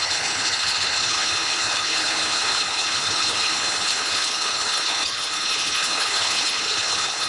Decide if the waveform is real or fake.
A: fake